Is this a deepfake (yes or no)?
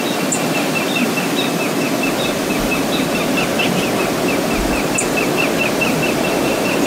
no